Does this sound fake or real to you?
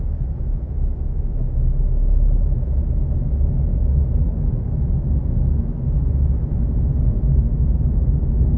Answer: fake